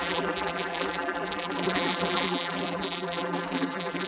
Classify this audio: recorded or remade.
remade